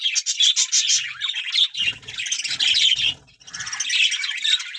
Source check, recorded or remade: recorded